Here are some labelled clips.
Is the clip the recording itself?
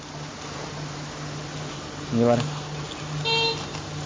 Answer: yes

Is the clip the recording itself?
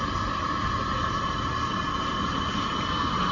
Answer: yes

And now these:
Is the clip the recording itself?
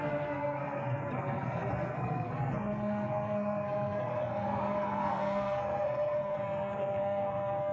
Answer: no